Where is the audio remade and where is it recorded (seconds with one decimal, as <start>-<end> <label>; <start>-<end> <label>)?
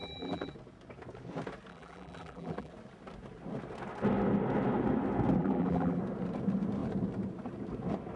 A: 0.0-0.5 remade; 0.5-1.7 recorded; 1.7-2.7 remade; 2.7-5.4 recorded; 5.4-6.0 remade; 6.0-8.2 recorded